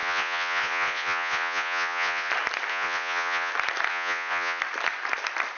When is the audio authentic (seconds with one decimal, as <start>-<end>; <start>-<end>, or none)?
2.3-2.7; 3.5-3.9; 4.6-5.6